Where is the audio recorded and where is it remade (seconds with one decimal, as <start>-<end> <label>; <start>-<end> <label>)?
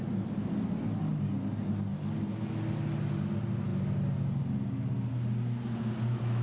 0.0-6.4 recorded